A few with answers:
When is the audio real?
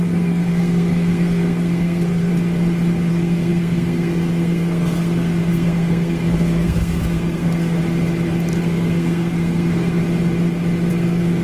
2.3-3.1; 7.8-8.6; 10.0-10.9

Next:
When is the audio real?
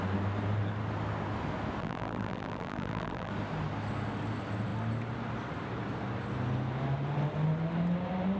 0.0-1.8; 3.3-8.4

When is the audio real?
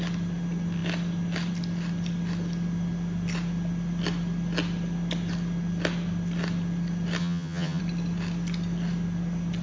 0.0-7.2; 7.8-9.6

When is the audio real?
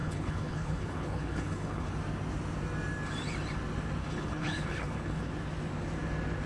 1.9-4.0; 5.3-6.5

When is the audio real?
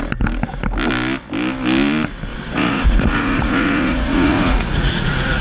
0.0-2.3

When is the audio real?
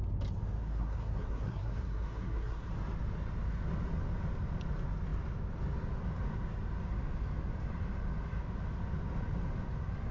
0.0-0.6; 2.7-10.1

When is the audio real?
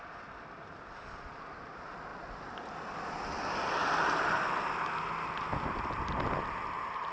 0.6-2.1; 4.8-7.1